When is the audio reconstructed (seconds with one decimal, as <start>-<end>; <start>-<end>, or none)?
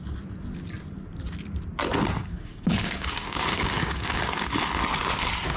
2.2-4.3